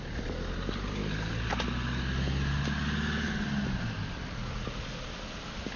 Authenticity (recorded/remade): recorded